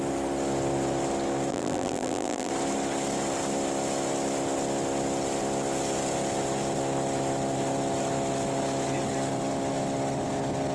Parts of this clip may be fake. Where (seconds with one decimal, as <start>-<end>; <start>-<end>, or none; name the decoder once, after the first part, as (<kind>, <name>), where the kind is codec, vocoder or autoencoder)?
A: 1.5-2.5 (vocoder, BigVGAN v2)